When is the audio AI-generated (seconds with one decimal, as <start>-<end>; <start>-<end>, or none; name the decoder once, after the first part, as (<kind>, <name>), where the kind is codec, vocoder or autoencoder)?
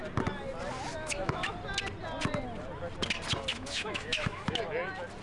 0.9-1.5 (autoencoder, DAC-VAE); 3.5-4.6